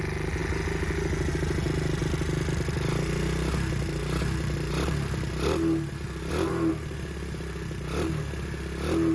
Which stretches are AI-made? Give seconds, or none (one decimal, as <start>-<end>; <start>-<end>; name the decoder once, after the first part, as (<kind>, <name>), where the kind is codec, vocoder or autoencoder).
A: none